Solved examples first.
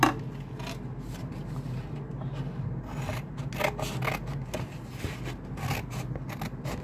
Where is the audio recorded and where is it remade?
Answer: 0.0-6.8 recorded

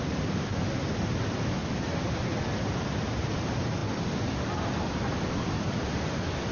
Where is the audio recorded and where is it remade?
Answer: 0.0-6.5 recorded

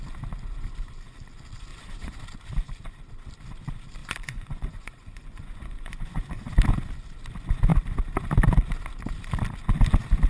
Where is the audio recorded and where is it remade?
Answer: 0.0-1.7 recorded; 1.7-2.2 remade; 2.2-4.0 recorded; 4.0-6.5 remade; 6.5-10.3 recorded

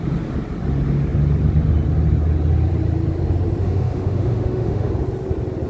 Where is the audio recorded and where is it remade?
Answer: 0.0-3.6 recorded; 3.6-4.9 remade; 4.9-5.7 recorded

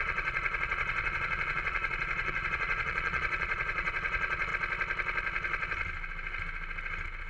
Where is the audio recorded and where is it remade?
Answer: 0.0-4.5 remade; 4.5-7.3 recorded

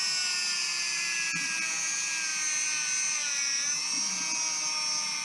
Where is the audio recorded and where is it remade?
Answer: 0.0-5.2 recorded